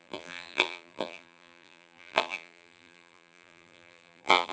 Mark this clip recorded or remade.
remade